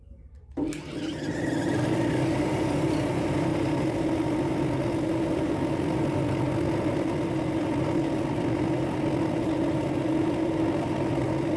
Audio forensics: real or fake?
real